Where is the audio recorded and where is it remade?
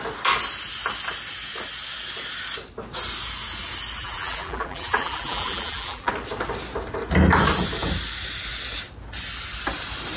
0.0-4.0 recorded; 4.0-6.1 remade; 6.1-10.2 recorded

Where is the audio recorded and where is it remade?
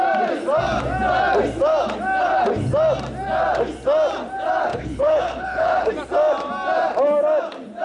0.0-4.7 recorded; 4.7-5.9 remade; 5.9-7.8 recorded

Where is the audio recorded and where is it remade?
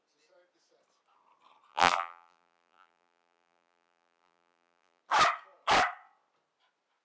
0.0-1.7 recorded; 1.7-5.0 remade; 5.0-7.0 recorded